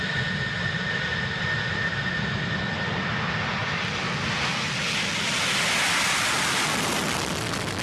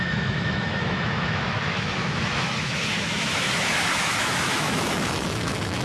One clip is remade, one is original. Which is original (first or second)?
first